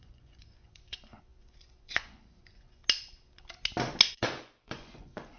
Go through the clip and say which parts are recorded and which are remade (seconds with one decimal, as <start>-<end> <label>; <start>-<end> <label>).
0.0-2.8 remade; 2.8-4.1 recorded; 4.1-5.4 remade